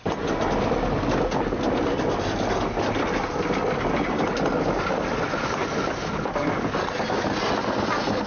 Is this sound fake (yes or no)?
no